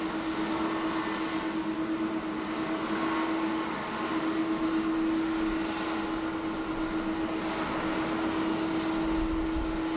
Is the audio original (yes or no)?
yes